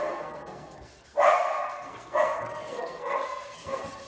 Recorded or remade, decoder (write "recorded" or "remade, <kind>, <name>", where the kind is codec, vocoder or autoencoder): remade, codec, SNAC